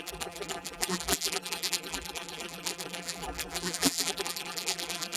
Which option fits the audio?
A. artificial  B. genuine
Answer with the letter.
A